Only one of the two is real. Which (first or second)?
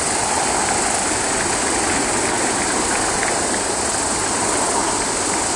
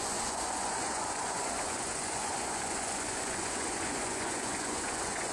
first